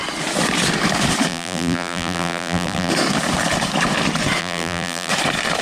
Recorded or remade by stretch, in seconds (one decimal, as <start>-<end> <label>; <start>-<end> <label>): 0.0-1.3 recorded; 1.3-2.9 remade; 2.9-4.4 recorded; 4.4-5.1 remade; 5.1-5.6 recorded

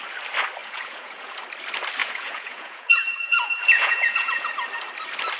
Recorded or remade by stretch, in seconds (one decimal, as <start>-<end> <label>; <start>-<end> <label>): 0.0-0.6 recorded; 0.6-1.4 remade; 1.4-2.0 recorded; 2.0-4.5 remade; 4.5-5.4 recorded

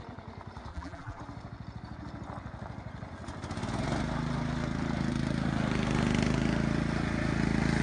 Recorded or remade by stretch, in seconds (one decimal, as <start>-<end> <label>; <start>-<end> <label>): 0.0-0.7 recorded; 0.7-1.2 remade; 1.2-7.8 recorded

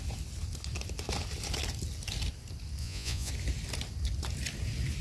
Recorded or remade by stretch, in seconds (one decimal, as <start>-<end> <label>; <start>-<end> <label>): 0.0-2.8 recorded; 2.8-3.3 remade; 3.3-5.0 recorded

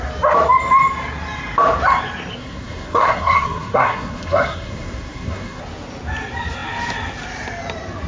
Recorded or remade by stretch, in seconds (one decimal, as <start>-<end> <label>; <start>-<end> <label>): 0.0-2.4 recorded; 2.4-5.6 remade; 5.6-8.1 recorded

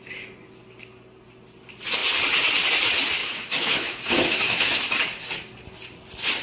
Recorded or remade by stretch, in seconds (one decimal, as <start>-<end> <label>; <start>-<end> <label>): 0.0-3.2 recorded; 3.2-4.8 remade; 4.8-6.4 recorded